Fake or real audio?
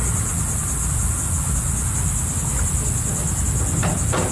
real